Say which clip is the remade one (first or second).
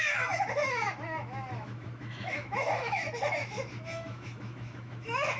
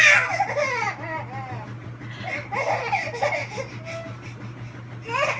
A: first